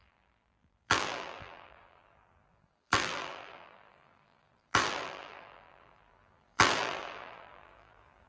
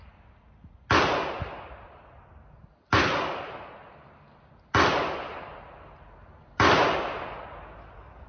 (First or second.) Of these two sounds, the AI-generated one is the first